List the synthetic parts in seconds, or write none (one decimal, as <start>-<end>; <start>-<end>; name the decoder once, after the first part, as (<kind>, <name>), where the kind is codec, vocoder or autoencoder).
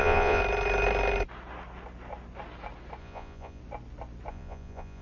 0.0-0.4 (vocoder, Vocos); 3.0-3.6; 4.3-5.0